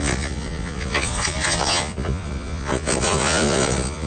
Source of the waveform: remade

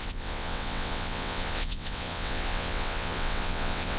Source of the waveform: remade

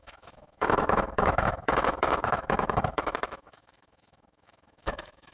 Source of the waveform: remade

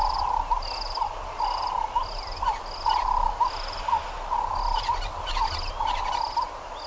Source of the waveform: recorded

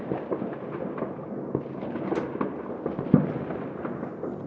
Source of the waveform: recorded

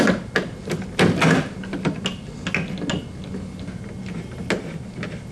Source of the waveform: recorded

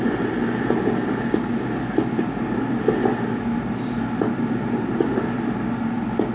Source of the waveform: recorded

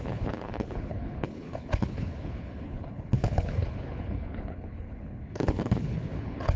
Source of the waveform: remade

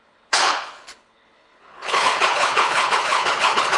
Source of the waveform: remade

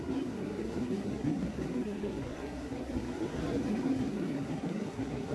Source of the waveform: remade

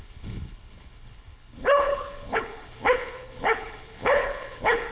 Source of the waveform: remade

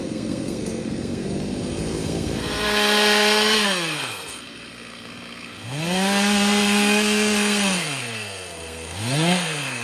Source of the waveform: remade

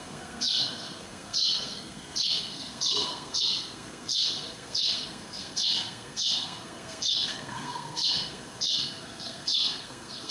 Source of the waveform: remade